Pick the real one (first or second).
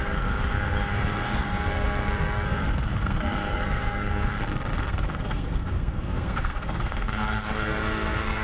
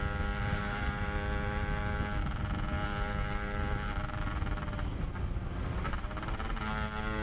second